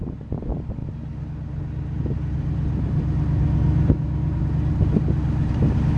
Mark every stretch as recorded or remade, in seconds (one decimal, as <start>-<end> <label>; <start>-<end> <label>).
0.0-6.0 recorded